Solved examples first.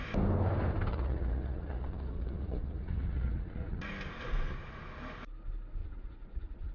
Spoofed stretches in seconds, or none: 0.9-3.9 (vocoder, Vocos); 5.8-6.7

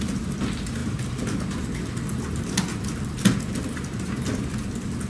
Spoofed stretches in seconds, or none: none

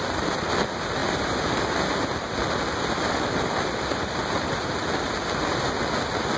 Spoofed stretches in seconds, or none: none

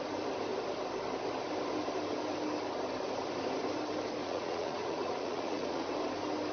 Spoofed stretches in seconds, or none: 4.2-5.9 (vocoder, Vocos)

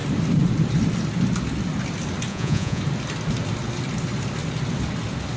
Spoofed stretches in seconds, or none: 2.3-2.8 (vocoder, Vocos)

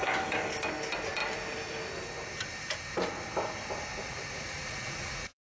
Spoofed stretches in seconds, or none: 3.9-5.5 (vocoder, Vocos)